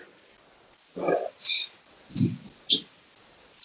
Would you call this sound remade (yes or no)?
no